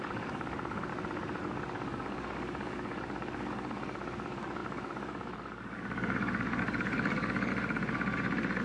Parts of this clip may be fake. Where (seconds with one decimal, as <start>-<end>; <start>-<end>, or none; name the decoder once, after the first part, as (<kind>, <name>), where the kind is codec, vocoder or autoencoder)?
0.0-0.9 (codec, DAC); 1.4-7.5